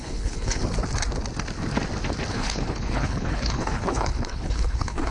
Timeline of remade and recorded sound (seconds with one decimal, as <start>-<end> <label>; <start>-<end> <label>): 0.0-0.6 remade; 0.6-2.3 recorded; 2.3-5.1 remade